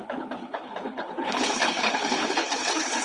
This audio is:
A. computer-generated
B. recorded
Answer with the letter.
A